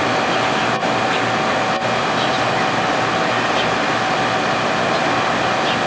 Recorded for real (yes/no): yes